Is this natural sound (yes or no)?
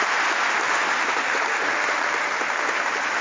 yes